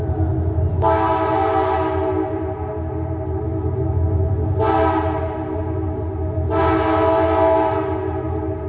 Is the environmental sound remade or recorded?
recorded